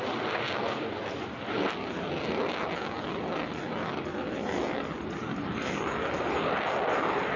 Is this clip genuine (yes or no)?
yes